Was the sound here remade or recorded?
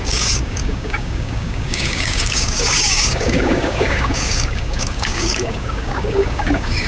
remade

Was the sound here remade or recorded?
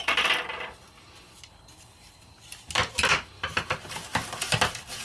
recorded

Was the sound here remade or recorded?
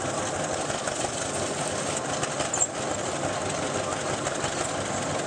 recorded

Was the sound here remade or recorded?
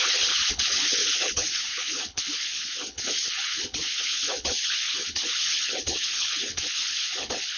remade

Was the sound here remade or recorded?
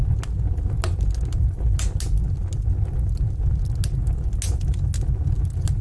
recorded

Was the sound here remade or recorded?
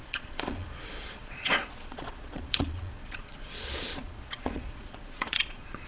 remade